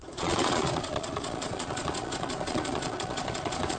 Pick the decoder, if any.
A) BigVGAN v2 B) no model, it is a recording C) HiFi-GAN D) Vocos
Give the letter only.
D